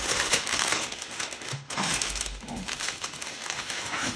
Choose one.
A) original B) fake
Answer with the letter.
B